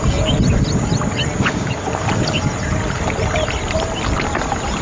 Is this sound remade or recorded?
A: recorded